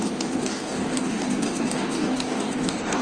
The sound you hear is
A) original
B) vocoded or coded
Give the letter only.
B